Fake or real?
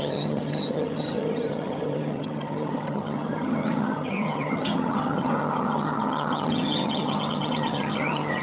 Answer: fake